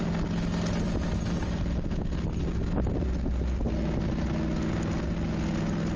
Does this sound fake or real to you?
real